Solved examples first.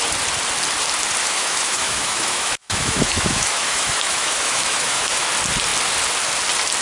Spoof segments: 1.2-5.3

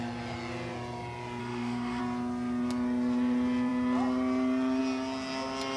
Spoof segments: 1.4-2.0

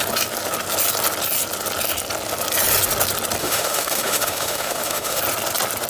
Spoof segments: 3.4-5.2